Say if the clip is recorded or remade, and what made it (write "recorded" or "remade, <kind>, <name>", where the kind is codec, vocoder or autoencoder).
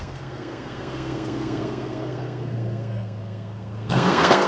remade, codec, SNAC